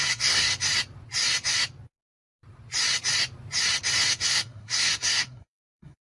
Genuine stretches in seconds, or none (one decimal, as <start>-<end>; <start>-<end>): 0.5-4.1